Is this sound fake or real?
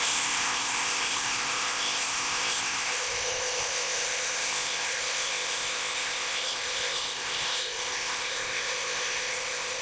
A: fake